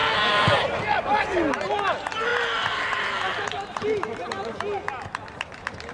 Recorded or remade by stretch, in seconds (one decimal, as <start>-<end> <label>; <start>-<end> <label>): 0.0-5.9 recorded